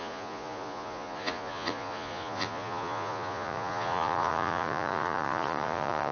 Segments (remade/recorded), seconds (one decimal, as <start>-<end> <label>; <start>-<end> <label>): 0.0-6.1 remade